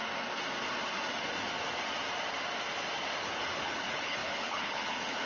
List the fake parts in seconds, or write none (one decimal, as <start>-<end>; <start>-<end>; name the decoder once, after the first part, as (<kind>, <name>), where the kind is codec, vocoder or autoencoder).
3.2-5.3 (codec, HILCodec)